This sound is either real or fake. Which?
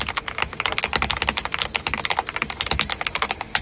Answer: real